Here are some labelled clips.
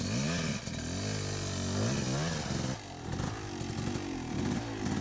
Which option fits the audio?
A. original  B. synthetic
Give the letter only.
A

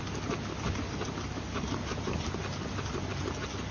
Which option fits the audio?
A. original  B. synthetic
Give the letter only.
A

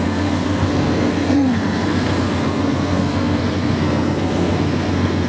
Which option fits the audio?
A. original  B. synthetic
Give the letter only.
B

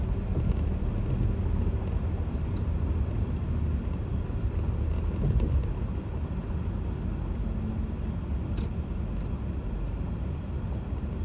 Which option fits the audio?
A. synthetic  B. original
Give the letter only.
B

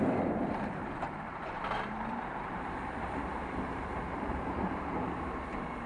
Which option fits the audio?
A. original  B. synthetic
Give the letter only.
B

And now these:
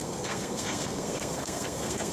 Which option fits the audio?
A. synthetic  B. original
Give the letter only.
A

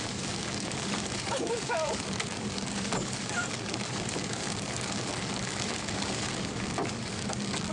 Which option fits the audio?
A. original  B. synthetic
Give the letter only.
B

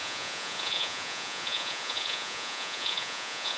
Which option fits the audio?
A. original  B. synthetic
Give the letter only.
B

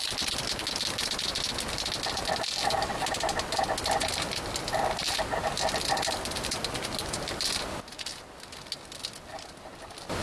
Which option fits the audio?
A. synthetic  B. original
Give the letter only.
B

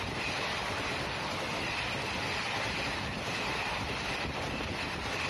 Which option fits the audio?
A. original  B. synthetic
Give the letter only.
B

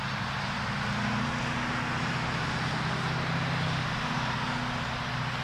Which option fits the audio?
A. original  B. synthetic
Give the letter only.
A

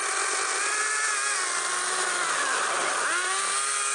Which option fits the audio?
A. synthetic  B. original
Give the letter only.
B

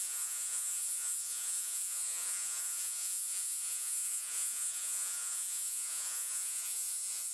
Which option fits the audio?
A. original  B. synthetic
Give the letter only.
B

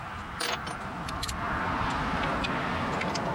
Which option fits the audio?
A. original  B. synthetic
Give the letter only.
A